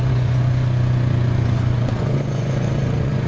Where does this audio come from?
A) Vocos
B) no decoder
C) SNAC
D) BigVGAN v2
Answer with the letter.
A